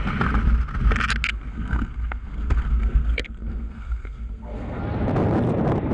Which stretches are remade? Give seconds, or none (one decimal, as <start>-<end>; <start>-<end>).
1.3-4.8